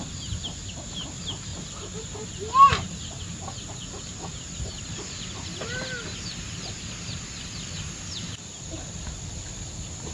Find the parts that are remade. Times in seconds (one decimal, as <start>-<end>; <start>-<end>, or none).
none

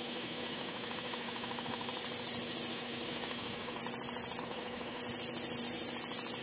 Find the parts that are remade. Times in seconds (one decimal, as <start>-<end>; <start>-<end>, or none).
0.0-1.9; 2.7-3.8; 4.4-5.0

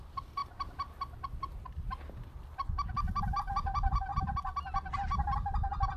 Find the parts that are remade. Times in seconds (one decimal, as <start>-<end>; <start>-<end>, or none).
none

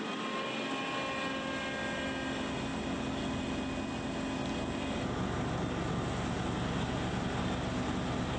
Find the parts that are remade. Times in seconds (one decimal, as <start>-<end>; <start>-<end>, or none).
none

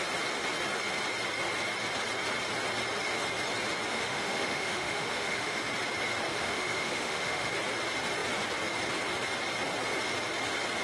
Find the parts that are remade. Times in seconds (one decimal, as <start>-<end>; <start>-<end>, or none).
3.9-5.7; 6.3-7.5